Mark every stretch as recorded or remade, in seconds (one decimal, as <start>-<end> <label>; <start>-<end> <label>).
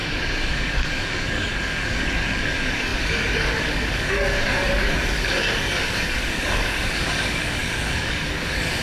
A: 0.0-8.8 remade